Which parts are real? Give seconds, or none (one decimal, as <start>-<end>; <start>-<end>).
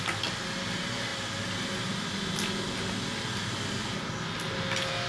0.0-5.1